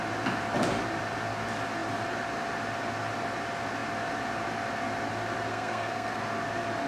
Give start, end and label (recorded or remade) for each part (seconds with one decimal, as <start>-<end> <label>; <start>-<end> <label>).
0.0-5.5 recorded; 5.5-6.2 remade; 6.2-6.9 recorded